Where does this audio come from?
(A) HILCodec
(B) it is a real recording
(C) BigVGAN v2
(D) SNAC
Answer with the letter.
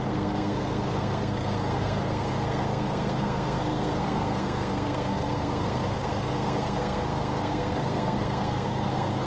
D